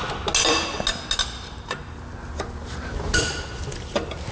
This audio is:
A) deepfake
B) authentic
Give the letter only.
B